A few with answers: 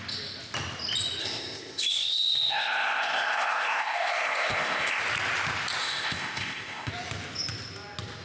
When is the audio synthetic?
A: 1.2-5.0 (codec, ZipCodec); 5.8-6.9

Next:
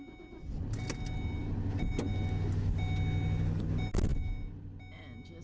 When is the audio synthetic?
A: none

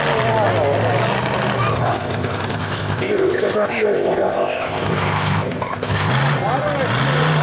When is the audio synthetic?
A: 1.7-6.1 (codec, ZipCodec)

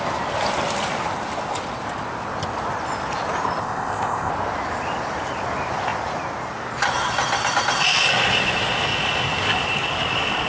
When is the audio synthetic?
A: 3.6-4.3 (codec, ZipCodec)

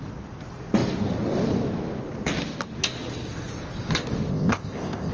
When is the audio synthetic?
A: 4.3-5.1 (codec, ZipCodec)

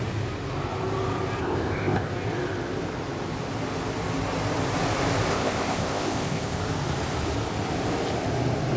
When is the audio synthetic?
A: 1.4-2.1 (codec, ZipCodec); 5.3-6.6

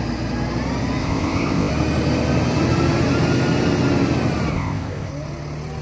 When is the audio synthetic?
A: 1.0-1.7 (codec, ZipCodec); 4.5-5.1

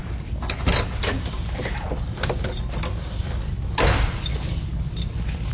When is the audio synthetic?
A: none